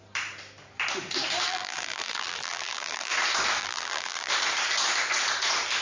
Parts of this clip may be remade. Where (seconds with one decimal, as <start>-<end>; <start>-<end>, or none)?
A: 1.5-3.1; 3.6-4.3